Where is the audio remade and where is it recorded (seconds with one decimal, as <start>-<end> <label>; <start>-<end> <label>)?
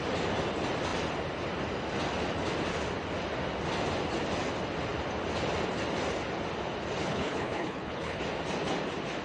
0.0-7.0 recorded; 7.0-8.2 remade; 8.2-9.2 recorded